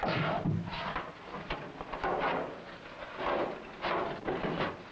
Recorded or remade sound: recorded